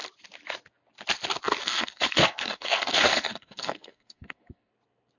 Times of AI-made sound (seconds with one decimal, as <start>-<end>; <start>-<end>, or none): 1.6-4.7